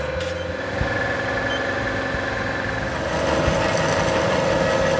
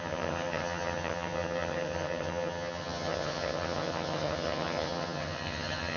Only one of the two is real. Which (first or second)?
first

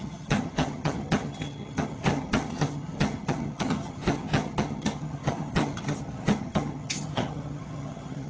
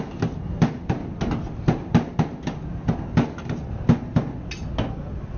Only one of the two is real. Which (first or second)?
second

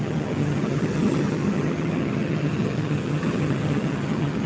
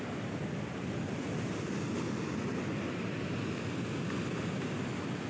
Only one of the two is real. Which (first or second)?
second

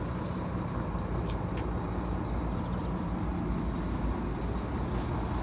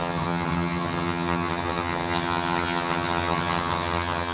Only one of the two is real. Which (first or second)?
first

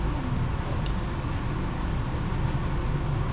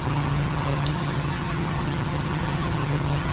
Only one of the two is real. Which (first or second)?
first